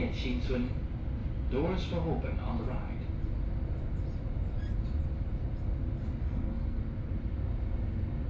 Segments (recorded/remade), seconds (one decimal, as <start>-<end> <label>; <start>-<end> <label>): 0.0-6.2 recorded; 6.2-6.8 remade; 6.8-8.3 recorded